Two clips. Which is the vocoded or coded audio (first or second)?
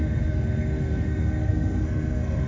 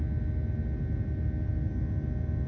first